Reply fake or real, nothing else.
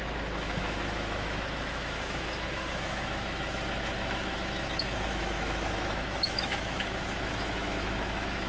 fake